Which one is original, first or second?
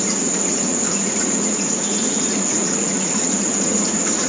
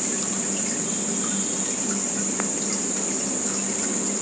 second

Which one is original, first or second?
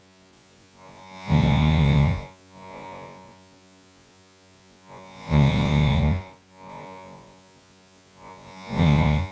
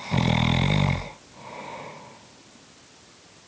second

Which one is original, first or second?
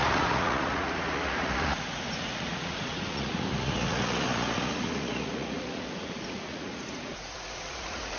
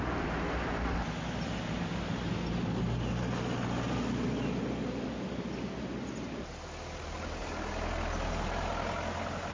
second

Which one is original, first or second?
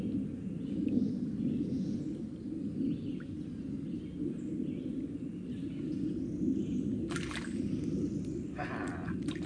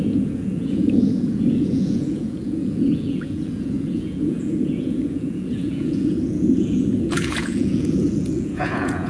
first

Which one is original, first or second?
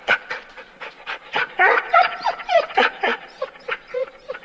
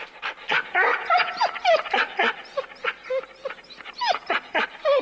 second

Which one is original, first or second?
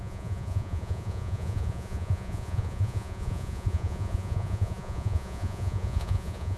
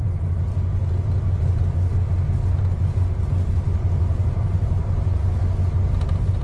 second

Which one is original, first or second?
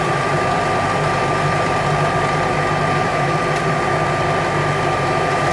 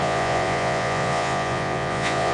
first